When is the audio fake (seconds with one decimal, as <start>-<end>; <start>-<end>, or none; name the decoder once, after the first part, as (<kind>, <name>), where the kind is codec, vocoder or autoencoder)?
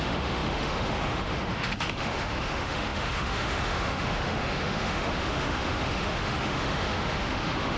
0.0-7.8 (autoencoder, DAC-VAE)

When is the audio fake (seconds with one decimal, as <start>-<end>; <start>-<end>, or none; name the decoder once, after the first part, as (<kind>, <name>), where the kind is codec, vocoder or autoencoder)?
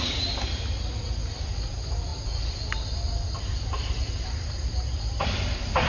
none